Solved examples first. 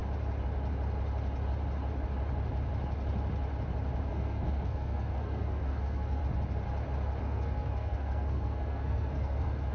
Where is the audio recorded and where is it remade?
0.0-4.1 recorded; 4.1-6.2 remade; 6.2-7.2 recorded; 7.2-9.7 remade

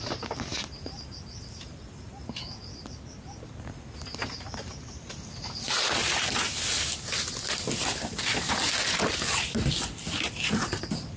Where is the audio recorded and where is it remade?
0.0-0.5 recorded; 0.5-2.4 remade; 2.4-4.6 recorded; 4.6-5.1 remade; 5.1-11.2 recorded

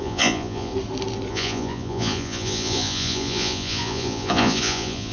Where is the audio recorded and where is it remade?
0.0-0.7 remade; 0.7-1.3 recorded; 1.3-5.1 remade

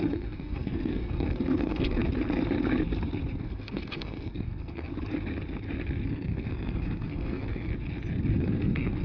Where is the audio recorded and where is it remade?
0.0-2.0 remade; 2.0-3.4 recorded; 3.4-4.9 remade; 4.9-6.1 recorded; 6.1-7.7 remade; 7.7-8.4 recorded; 8.4-9.0 remade

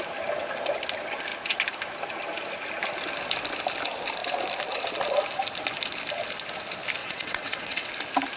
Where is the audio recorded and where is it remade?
0.0-7.0 recorded; 7.0-7.9 remade; 7.9-8.4 recorded

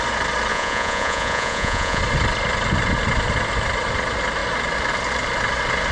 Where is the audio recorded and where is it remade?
0.0-0.5 recorded; 0.5-2.0 remade; 2.0-5.9 recorded

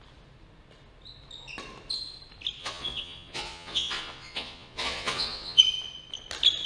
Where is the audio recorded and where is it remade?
0.0-2.6 recorded; 2.6-5.6 remade; 5.6-6.7 recorded

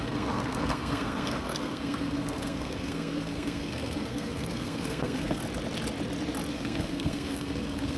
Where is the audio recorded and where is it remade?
0.0-5.4 remade; 5.4-6.5 recorded; 6.5-8.0 remade